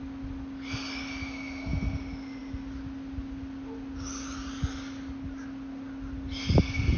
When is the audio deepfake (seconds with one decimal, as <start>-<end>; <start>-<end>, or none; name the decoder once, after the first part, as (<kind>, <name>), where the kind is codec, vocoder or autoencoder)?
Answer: none